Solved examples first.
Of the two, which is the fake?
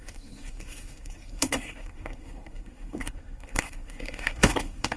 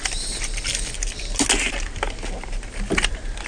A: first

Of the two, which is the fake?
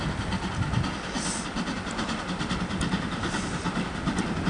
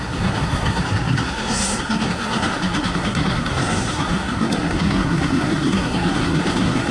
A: second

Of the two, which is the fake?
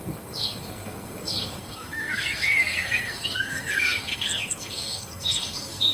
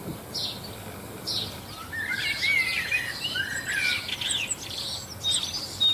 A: first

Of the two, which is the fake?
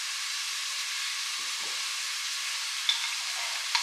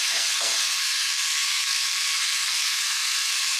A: second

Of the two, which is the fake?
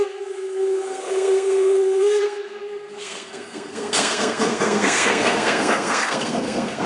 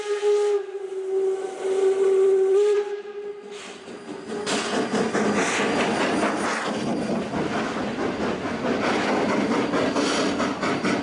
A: first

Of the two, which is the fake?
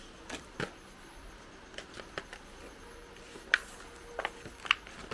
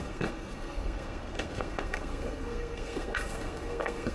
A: second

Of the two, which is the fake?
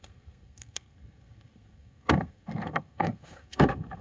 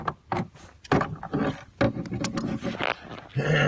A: first